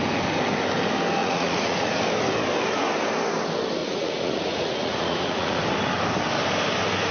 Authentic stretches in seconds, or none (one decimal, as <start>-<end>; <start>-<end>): 0.0-1.2; 2.0-3.8; 5.6-7.1